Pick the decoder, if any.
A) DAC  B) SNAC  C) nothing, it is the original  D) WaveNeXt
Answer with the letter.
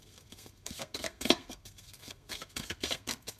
B